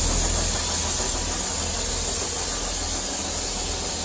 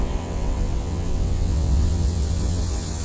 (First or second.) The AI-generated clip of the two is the second